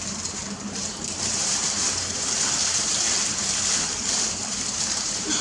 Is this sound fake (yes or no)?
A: yes